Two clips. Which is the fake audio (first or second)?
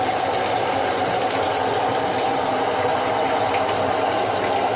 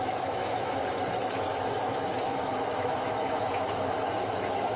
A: second